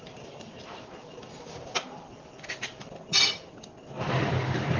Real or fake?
real